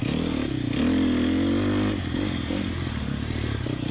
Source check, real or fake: real